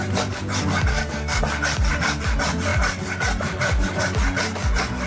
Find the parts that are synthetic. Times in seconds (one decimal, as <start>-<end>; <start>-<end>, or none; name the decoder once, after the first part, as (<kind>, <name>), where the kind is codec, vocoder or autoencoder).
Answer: 0.9-1.4 (codec, SNAC)